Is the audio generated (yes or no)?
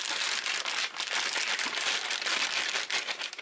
no